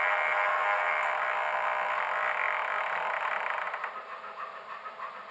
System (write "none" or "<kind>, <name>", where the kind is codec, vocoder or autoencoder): none